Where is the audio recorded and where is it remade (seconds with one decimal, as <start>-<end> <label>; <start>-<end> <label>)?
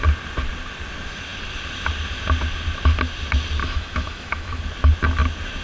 0.0-3.6 recorded; 3.6-4.6 remade; 4.6-5.6 recorded